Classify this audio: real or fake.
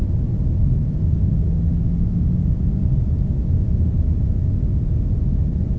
real